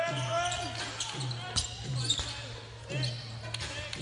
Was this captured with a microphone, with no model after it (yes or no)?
yes